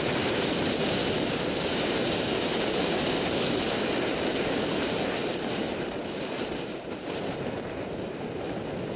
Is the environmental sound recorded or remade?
remade